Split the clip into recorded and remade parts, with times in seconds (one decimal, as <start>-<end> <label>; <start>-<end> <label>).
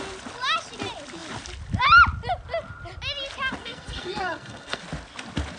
0.0-3.6 recorded; 3.6-4.8 remade; 4.8-5.6 recorded